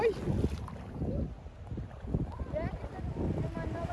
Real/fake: real